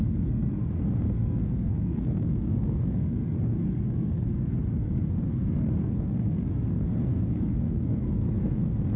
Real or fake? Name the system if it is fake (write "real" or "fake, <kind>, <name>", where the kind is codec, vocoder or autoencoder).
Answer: fake, codec, SNAC